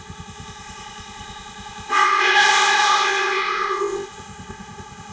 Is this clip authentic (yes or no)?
no